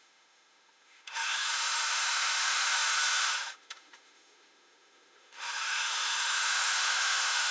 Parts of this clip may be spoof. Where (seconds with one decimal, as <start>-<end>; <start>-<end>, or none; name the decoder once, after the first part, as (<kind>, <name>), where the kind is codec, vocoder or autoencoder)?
0.0-7.5 (autoencoder, DAC-VAE)